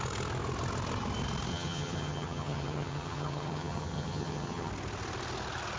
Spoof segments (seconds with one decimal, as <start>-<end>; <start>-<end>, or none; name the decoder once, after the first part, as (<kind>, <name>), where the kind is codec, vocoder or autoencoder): 1.5-4.7 (vocoder, HiFi-GAN)

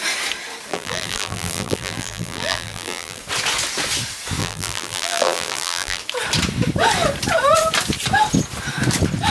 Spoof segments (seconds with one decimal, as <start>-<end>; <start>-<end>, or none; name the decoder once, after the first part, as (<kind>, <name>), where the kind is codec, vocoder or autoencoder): 0.7-3.2 (vocoder, BigVGAN v2); 4.4-6.0

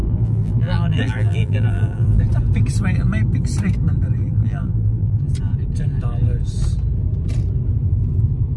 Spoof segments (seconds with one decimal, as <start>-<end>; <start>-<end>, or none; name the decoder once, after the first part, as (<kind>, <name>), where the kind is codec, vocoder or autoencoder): 0.0-2.2 (vocoder, BigVGAN v2); 4.2-5.3

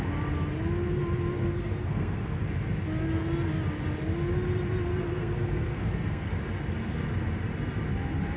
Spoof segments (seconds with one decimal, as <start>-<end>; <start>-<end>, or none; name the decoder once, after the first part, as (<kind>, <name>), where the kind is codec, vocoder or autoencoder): 1.4-2.4 (codec, SNAC); 4.9-6.3

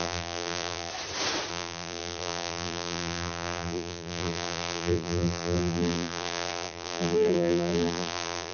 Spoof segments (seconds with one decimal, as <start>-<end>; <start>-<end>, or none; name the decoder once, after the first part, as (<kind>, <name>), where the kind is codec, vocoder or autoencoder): 0.0-0.9 (vocoder, BigVGAN v2); 1.5-8.5